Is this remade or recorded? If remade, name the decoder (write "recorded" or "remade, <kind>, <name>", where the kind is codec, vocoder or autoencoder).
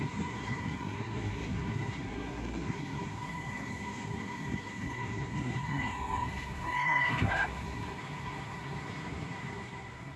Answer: remade, codec, SNAC